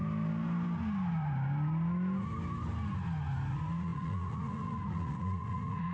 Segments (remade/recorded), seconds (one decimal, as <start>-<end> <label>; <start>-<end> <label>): 0.0-3.5 recorded; 3.5-5.9 remade